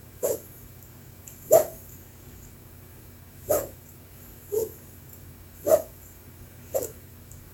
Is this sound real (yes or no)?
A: no